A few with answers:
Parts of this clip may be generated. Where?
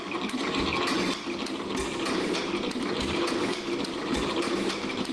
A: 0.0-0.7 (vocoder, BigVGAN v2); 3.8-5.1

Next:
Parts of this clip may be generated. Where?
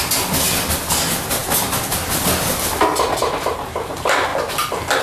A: none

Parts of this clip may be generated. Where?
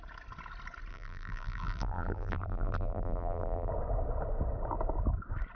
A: 0.9-3.7 (vocoder, BigVGAN v2)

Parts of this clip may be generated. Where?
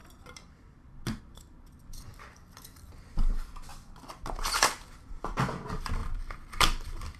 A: 0.0-6.0 (vocoder, BigVGAN v2); 6.6-7.2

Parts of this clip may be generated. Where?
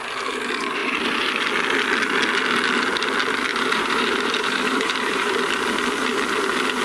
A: 0.8-1.3 (vocoder, BigVGAN v2); 3.5-5.4